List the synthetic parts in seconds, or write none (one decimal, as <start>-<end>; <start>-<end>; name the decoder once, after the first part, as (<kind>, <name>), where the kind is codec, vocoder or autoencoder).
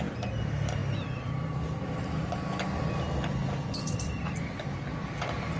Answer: none